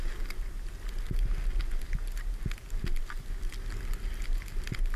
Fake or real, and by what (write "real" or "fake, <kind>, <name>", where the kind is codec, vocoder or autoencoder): real